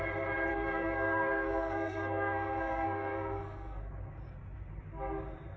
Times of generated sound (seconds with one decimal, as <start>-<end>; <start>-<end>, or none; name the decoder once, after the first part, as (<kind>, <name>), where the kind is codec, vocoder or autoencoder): 0.5-3.8 (codec, SNAC)